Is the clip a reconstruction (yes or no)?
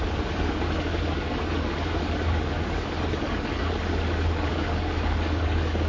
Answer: yes